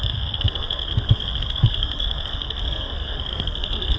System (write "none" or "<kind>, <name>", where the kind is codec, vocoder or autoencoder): codec, SNAC